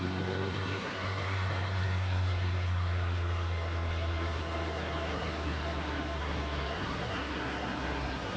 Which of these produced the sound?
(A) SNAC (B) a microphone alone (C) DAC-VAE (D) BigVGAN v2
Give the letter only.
A